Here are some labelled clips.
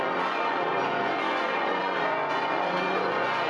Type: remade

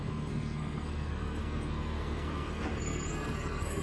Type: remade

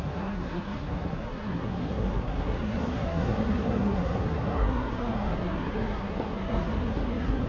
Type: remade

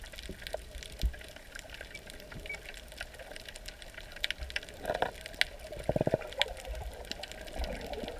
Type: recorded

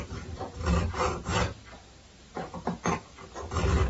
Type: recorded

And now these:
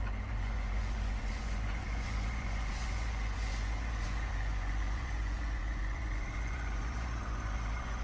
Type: remade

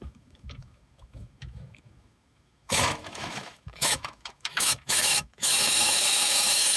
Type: remade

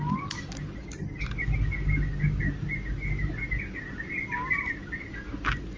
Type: recorded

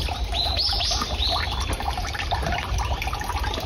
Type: recorded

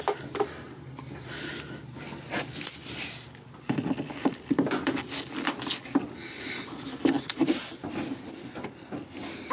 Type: recorded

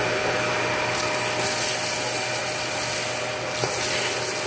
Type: recorded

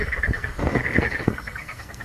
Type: remade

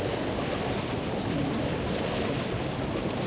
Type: recorded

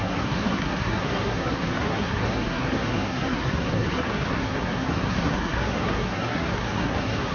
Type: remade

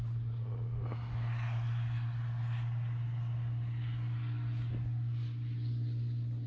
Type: recorded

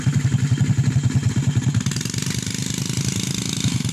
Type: recorded